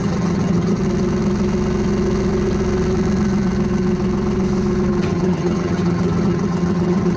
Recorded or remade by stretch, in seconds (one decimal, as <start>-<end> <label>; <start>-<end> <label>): 0.0-0.8 remade; 0.8-5.0 recorded; 5.0-7.2 remade